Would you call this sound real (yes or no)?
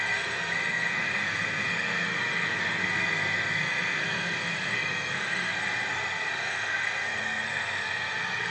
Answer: no